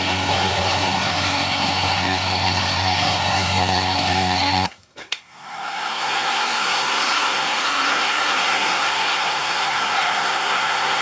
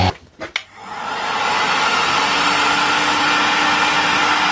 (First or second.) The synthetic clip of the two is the first